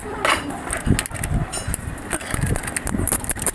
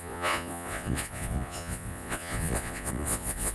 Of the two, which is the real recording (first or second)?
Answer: first